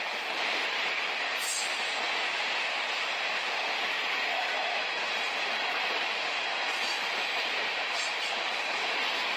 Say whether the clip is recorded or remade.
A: recorded